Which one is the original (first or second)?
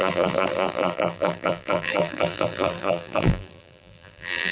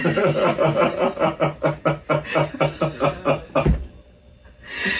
second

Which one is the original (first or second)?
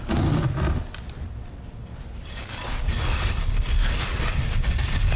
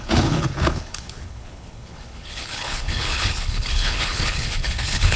first